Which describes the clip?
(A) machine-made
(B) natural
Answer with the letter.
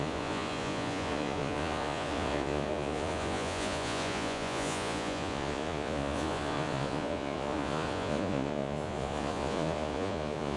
A